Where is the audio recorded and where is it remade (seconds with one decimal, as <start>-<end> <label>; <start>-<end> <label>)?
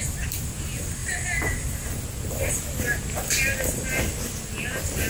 0.0-5.1 recorded